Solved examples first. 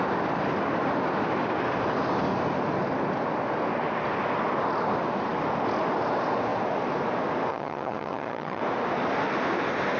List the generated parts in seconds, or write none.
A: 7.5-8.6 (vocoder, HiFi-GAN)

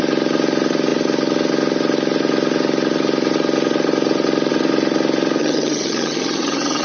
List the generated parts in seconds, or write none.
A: 5.4-6.8 (vocoder, HiFi-GAN)

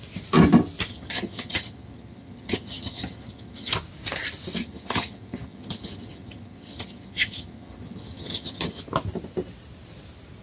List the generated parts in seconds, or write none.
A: 0.9-3.7 (vocoder, HiFi-GAN); 4.6-8.8

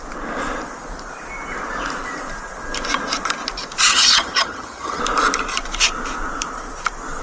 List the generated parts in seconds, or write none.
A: 3.9-5.0 (vocoder, HiFi-GAN)

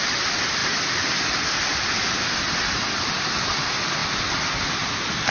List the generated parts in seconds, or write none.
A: none